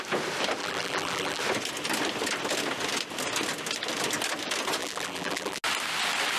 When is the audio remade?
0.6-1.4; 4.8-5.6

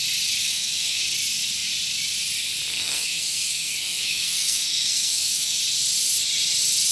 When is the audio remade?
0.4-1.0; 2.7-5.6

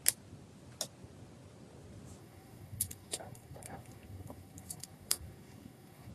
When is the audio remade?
2.2-6.1

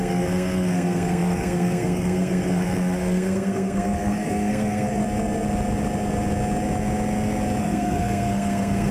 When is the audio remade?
0.0-5.0; 7.6-8.9

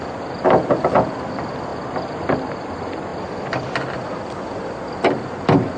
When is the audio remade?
none

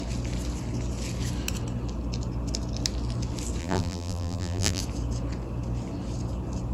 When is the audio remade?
3.6-4.8